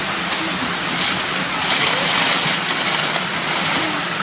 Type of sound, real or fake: real